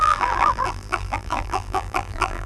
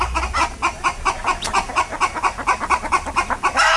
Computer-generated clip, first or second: first